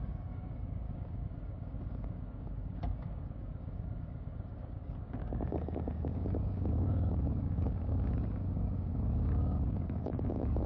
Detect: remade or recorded remade